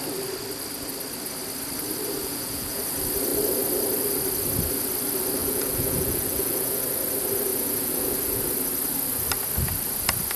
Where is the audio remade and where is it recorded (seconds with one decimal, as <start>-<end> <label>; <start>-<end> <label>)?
0.0-2.2 recorded; 2.2-2.8 remade; 2.8-5.4 recorded; 5.4-6.8 remade; 6.8-7.5 recorded; 7.5-8.4 remade; 8.4-10.4 recorded

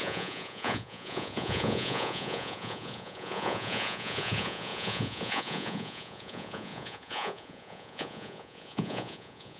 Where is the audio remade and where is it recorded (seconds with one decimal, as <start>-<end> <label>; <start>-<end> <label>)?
0.0-9.6 remade